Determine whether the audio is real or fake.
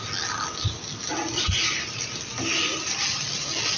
real